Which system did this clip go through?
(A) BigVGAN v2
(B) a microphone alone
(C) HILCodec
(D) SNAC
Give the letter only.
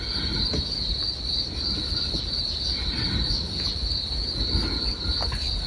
B